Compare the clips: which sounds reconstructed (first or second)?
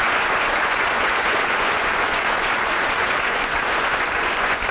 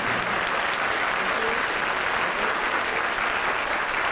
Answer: first